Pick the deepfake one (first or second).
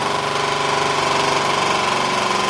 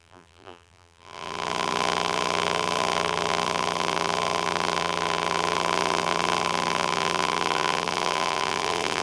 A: second